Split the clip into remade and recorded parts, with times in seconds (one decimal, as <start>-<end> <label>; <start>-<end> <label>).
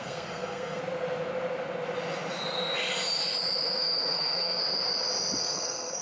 0.0-0.8 remade; 0.8-3.8 recorded; 3.8-4.6 remade; 4.6-5.4 recorded; 5.4-6.0 remade